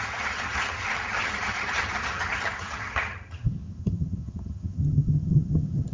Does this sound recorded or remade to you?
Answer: remade